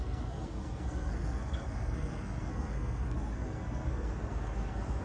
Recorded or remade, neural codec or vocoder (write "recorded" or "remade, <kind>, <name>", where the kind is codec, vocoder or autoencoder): remade, codec, SNAC